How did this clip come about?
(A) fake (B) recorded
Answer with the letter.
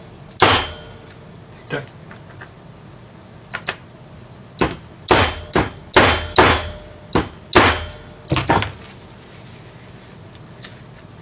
B